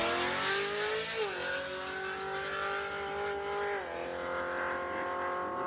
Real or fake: real